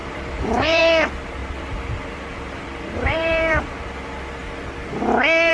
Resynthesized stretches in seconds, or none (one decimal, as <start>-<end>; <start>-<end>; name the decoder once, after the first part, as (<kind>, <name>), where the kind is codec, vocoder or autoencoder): 0.0-0.8 (vocoder, BigVGAN v2); 1.4-3.7

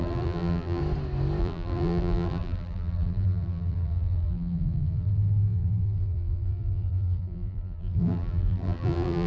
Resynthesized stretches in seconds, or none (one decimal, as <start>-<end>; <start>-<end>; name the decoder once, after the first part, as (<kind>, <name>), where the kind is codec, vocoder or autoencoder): 0.0-0.8 (vocoder, BigVGAN v2); 1.4-9.3

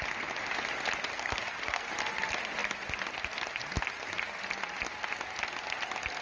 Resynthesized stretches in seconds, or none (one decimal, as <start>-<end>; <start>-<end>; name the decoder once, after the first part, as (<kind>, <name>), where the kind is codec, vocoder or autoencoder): 1.1-1.9 (codec, SNAC)

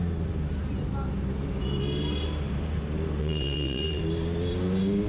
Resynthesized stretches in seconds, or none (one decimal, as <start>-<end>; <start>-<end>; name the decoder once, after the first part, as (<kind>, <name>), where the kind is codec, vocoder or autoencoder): 3.2-4.0 (vocoder, WaveNeXt)

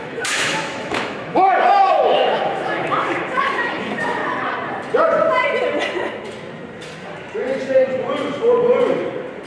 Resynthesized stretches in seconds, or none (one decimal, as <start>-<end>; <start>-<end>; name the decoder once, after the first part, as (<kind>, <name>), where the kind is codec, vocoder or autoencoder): 0.0-4.2 (autoencoder, DAC-VAE)

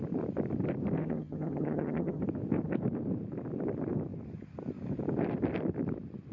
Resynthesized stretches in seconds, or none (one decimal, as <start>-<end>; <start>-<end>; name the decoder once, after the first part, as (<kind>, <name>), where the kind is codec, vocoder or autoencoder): 1.0-2.2 (vocoder, HiFi-GAN)